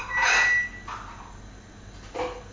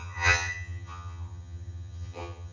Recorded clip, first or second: first